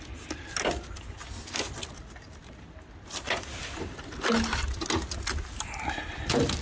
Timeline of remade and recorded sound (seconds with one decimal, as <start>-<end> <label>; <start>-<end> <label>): 0.0-6.6 recorded